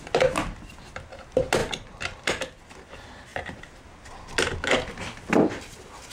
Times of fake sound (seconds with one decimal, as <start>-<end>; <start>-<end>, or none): 1.6-2.6